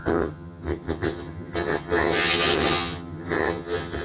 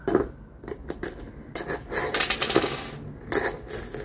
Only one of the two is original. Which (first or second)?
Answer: second